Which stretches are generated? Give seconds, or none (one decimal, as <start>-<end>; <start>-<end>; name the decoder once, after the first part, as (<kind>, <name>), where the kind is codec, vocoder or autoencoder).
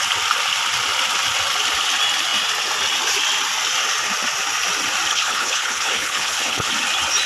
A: 5.1-6.7 (codec, HILCodec)